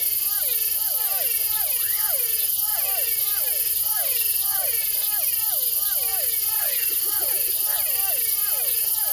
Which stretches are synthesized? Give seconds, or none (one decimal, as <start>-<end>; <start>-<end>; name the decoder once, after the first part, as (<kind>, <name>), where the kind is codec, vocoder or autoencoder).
none

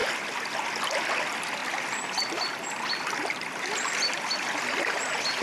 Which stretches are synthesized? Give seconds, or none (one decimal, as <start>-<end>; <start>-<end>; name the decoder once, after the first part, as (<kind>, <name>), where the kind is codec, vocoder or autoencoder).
none

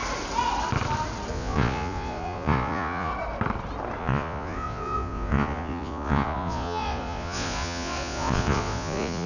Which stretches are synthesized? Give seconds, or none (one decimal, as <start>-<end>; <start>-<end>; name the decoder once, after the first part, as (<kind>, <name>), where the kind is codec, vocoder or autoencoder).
1.3-3.1 (vocoder, Vocos); 4.0-9.3

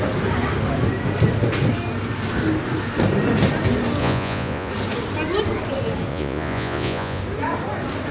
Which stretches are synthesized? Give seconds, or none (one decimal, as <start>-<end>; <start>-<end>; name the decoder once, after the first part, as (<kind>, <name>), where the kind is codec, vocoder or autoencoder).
4.0-4.7 (vocoder, Vocos); 6.1-7.2

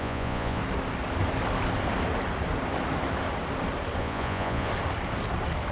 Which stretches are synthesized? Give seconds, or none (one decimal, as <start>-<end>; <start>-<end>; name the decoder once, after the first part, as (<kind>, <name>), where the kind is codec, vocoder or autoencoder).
0.0-0.6 (vocoder, Vocos); 4.0-4.7